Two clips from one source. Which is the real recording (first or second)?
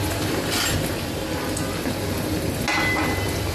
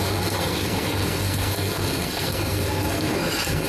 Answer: first